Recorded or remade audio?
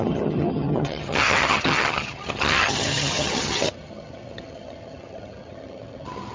remade